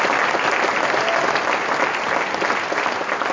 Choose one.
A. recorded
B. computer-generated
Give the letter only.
A